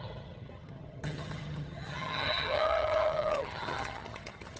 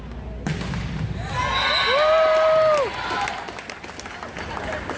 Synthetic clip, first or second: first